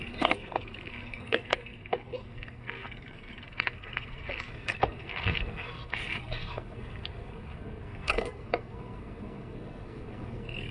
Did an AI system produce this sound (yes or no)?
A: yes